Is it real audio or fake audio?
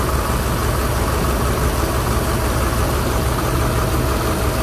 real